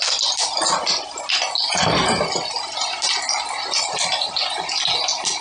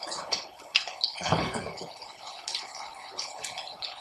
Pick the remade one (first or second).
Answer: second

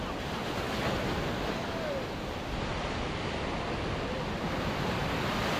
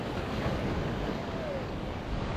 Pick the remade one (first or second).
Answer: second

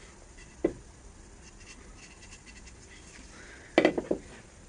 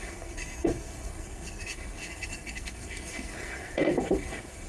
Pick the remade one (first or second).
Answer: second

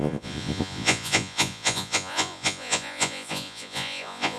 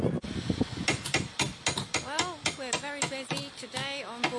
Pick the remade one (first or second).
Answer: first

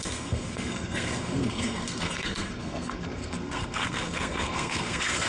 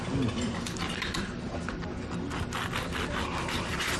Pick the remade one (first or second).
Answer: first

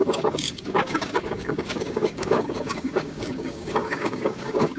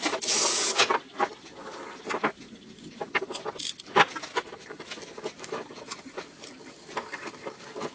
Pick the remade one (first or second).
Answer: first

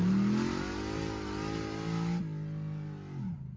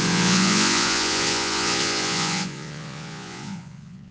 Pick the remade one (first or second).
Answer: second